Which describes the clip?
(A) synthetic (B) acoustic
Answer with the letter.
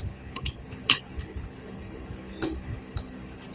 A